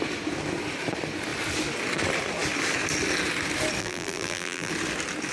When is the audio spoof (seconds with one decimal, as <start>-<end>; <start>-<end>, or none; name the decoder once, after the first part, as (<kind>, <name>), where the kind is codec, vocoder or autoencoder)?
3.8-4.7 (vocoder, BigVGAN v2)